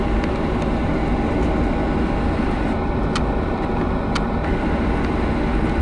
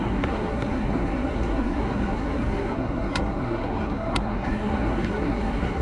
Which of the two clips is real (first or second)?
first